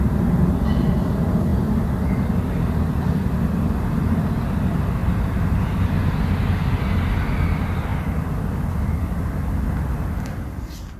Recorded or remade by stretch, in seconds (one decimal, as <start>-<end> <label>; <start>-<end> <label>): 0.0-5.0 recorded; 5.0-5.8 remade; 5.8-7.9 recorded; 7.9-8.7 remade; 8.7-11.0 recorded